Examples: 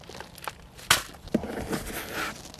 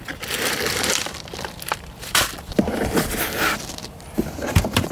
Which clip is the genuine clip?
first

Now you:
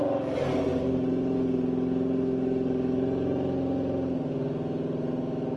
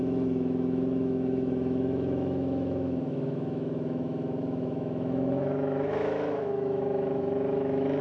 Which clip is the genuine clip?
first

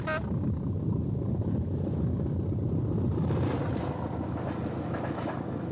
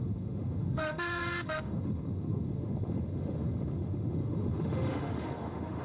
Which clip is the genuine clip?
first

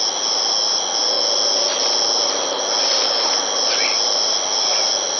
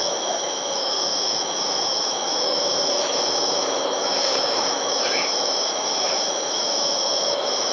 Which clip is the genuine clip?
first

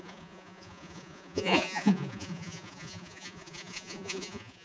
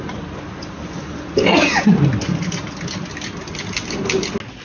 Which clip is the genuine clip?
second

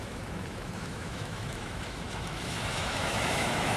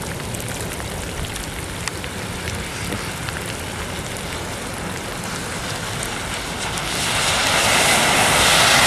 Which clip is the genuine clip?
second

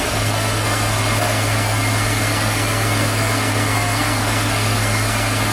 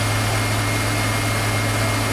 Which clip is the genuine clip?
second